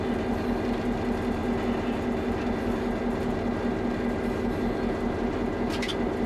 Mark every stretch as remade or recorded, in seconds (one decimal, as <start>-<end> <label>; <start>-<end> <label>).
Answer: 0.0-6.3 recorded